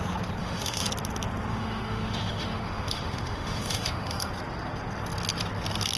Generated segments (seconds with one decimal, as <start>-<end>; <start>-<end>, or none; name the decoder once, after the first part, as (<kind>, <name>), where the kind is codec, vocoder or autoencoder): 0.4-0.9 (autoencoder, DAC-VAE); 1.5-4.3